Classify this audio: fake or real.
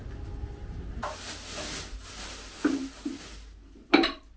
real